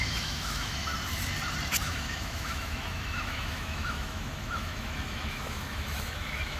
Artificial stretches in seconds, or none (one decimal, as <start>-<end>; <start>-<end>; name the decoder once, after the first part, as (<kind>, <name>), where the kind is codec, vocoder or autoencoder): 0.0-0.9 (autoencoder, DAC-VAE); 1.8-6.6